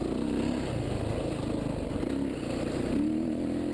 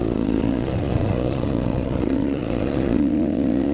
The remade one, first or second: second